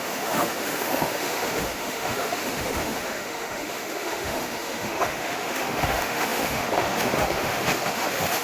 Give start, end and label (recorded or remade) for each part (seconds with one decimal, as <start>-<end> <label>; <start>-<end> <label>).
0.0-8.4 remade